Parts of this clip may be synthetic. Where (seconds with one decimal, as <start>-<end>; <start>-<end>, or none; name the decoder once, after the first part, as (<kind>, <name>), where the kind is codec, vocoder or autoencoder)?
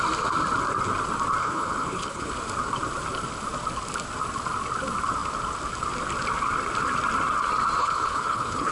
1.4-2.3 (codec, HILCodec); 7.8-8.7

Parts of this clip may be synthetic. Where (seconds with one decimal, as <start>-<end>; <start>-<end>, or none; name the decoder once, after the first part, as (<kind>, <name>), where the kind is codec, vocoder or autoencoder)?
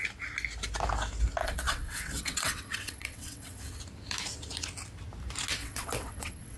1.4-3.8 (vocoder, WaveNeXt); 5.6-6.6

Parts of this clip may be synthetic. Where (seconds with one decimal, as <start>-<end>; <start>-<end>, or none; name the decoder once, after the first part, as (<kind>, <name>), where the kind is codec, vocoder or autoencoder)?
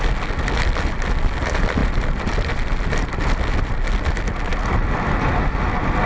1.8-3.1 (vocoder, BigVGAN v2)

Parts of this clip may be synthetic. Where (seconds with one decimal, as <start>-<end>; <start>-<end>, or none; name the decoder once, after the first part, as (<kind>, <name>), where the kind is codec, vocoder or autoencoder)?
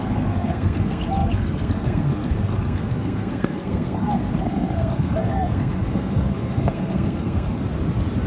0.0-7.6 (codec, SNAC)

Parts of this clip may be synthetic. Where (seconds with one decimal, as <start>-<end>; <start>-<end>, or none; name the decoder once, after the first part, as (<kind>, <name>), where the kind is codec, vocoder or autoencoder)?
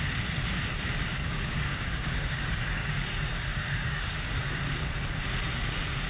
1.1-4.6 (codec, DAC)